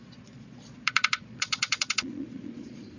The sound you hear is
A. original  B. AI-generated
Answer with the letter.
B